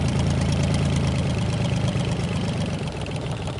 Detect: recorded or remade remade